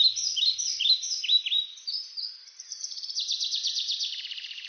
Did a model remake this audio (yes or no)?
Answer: yes